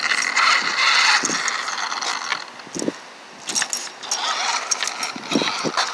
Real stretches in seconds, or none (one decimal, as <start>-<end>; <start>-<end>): 0.0-5.9